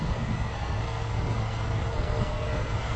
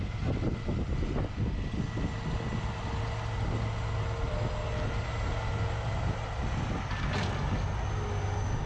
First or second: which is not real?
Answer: first